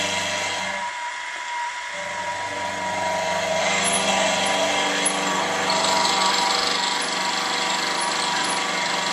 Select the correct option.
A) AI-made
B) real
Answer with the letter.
B